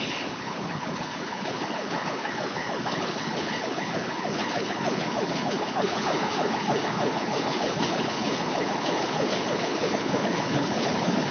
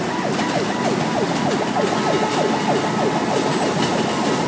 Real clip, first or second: second